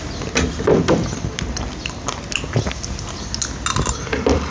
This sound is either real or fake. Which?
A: real